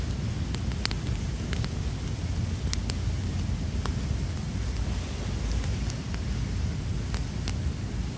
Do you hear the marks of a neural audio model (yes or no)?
no